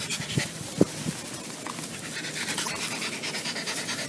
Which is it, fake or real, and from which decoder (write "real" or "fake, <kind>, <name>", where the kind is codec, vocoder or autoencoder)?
real